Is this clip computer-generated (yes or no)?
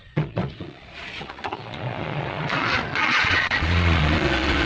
yes